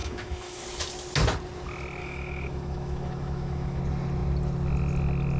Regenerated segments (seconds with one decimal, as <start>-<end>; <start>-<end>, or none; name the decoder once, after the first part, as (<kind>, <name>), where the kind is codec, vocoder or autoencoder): 0.0-0.6 (autoencoder, DAC-VAE); 2.0-3.8